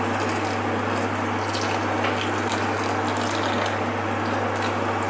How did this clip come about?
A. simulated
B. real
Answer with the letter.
B